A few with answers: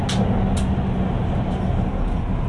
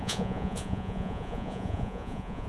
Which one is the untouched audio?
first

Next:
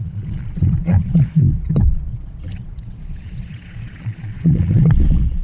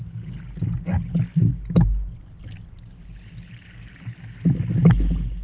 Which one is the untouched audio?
second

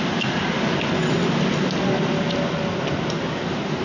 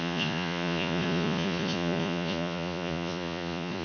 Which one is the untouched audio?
first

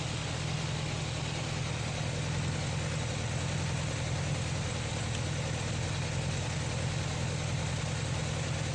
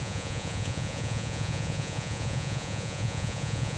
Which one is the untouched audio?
first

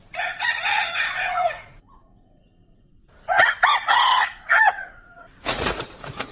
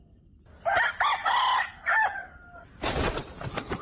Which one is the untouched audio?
second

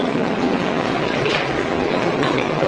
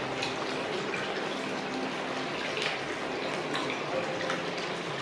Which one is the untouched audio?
second